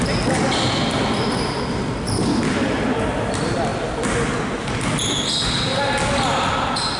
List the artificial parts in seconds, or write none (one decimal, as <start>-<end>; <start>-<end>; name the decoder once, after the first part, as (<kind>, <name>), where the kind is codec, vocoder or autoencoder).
none